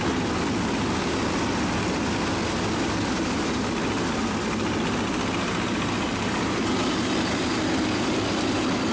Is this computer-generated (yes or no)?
no